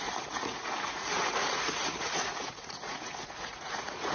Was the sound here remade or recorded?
remade